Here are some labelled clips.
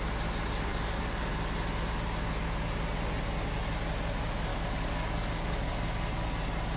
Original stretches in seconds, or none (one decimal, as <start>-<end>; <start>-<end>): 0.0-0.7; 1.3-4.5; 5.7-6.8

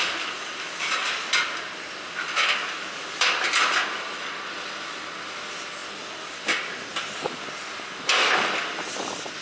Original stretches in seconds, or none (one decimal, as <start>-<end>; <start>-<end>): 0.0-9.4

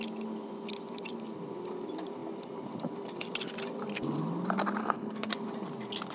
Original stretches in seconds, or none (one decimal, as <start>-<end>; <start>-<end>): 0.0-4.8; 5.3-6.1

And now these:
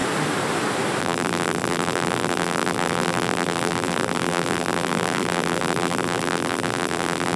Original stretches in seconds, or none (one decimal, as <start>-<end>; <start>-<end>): 0.0-1.0